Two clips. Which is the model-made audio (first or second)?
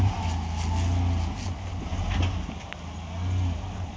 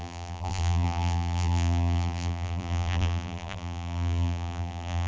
second